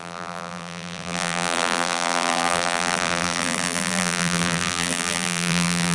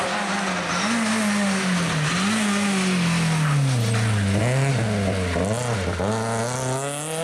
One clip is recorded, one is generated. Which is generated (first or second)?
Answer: first